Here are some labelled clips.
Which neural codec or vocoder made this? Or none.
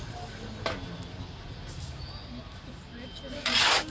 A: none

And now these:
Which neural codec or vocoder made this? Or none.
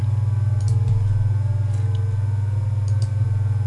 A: none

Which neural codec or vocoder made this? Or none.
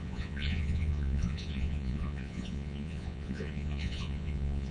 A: vocoder, Vocos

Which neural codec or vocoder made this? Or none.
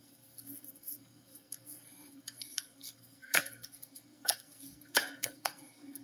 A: codec, SNAC